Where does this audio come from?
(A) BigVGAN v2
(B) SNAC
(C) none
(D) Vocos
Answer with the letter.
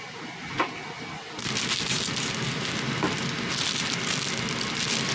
C